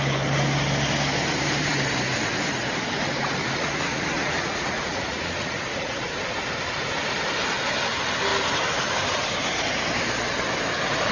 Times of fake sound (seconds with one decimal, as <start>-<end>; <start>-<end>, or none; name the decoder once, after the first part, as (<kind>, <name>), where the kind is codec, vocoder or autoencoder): 3.4-6.1 (vocoder, Vocos)